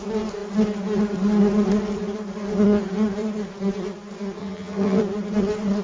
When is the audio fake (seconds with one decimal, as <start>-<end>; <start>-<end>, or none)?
4.4-5.0